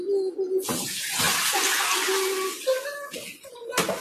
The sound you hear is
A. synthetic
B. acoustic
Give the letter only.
B